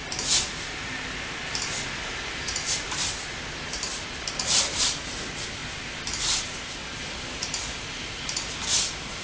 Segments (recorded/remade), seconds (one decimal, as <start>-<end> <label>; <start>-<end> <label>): 0.0-9.2 recorded